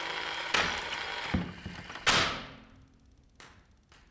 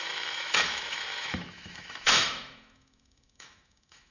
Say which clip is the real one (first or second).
first